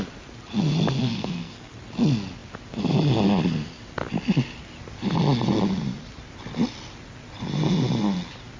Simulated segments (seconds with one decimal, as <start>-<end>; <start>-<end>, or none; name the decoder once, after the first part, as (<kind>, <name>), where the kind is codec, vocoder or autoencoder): 1.0-1.7 (codec, SNAC)